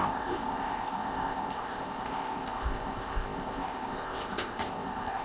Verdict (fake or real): fake